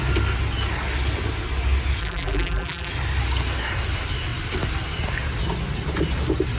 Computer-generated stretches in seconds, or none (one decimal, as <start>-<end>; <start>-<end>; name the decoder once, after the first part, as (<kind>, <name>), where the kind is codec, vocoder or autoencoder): 2.0-2.9 (vocoder, BigVGAN v2)